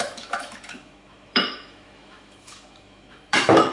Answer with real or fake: fake